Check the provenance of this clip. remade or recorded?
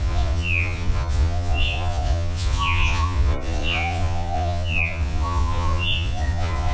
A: remade